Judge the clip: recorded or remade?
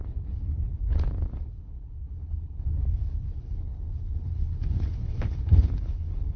remade